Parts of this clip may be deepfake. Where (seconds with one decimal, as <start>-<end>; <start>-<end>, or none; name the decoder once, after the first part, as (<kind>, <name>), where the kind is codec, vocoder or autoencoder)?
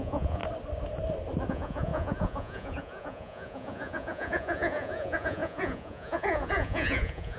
0.0-0.4 (vocoder, Vocos); 1.5-7.4